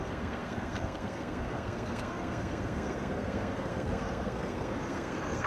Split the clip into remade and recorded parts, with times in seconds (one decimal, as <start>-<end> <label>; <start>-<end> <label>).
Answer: 0.0-5.5 remade